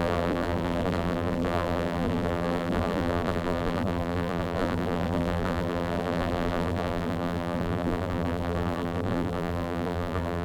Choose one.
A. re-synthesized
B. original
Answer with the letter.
A